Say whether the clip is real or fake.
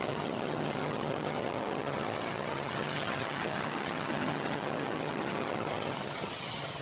fake